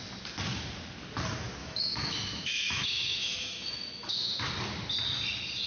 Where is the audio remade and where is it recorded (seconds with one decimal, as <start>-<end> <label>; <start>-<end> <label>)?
0.0-1.6 recorded; 1.6-4.5 remade; 4.5-5.7 recorded